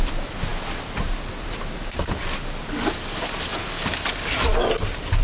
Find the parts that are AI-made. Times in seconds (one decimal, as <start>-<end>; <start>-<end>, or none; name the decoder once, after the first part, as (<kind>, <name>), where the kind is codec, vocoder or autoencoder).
none